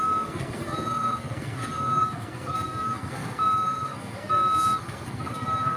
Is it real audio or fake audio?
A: fake